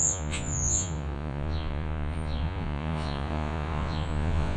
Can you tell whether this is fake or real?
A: fake